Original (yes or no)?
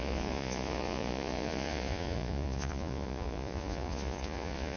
no